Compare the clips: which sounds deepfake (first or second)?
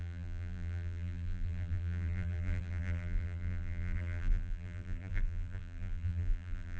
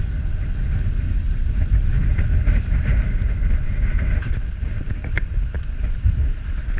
first